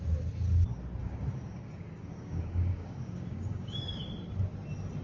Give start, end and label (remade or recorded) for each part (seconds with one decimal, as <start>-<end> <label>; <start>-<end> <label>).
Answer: 0.0-1.0 recorded; 1.0-4.0 remade; 4.0-5.0 recorded